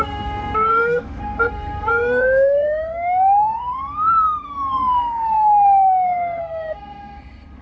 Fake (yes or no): yes